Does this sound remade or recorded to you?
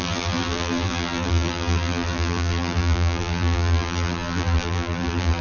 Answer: remade